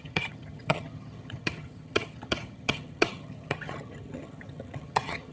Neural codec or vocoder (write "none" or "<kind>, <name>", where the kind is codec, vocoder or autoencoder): vocoder, HiFi-GAN